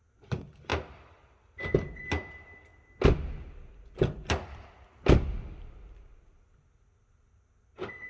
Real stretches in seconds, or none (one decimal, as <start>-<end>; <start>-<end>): 0.0-8.1